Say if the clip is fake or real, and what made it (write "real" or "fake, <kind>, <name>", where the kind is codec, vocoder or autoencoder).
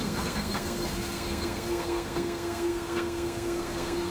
fake, codec, SNAC